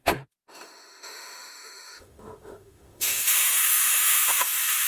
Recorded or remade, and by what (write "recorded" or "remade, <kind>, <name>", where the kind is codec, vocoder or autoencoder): remade, autoencoder, DAC-VAE